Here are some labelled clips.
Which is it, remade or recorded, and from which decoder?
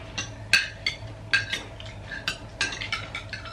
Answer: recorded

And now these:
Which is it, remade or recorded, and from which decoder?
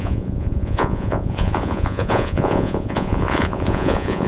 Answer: remade, vocoder, Vocos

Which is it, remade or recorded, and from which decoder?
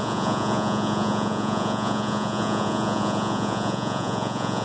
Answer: remade, vocoder, Vocos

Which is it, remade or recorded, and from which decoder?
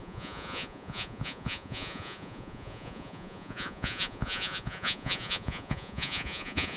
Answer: remade, vocoder, Vocos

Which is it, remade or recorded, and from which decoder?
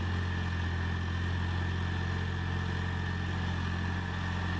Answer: recorded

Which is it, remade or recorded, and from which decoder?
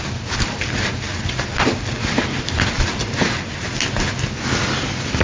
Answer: recorded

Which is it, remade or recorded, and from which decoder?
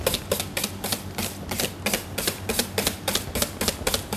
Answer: recorded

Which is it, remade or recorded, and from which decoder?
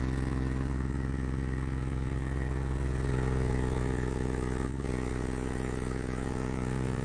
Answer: remade, vocoder, Vocos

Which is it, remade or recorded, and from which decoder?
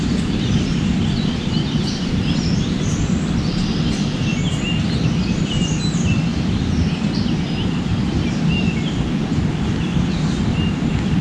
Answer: recorded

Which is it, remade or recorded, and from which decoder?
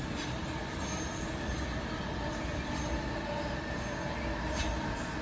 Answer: recorded